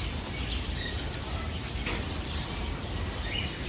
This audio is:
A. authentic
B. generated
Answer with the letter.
A